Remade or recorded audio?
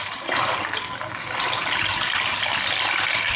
recorded